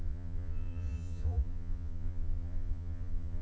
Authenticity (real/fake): fake